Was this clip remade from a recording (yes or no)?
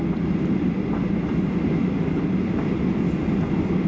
no